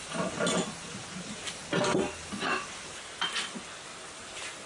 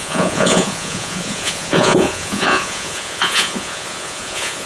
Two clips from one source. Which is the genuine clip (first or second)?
first